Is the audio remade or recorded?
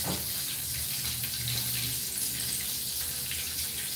recorded